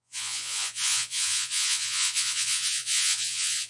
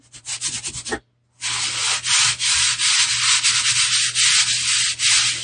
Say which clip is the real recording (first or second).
second